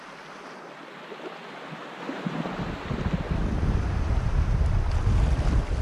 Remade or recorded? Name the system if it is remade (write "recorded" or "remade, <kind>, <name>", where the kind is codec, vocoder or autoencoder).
recorded